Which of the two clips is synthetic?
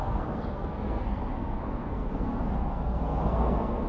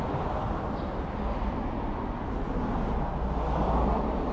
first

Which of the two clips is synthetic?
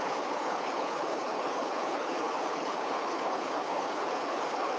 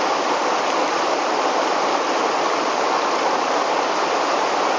first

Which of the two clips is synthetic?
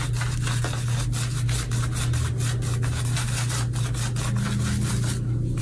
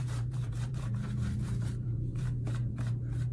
second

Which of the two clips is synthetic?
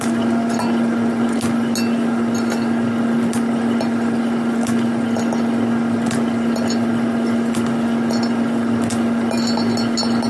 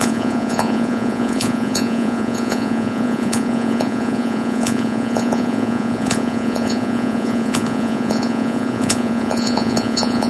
second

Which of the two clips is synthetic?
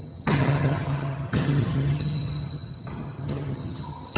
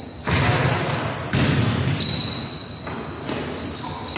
first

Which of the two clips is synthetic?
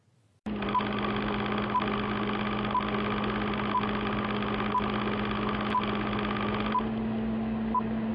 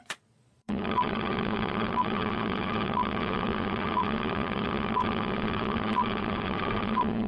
second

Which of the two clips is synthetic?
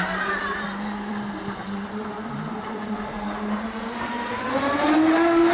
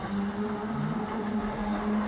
first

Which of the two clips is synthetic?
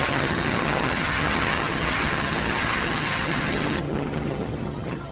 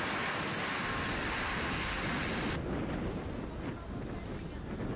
first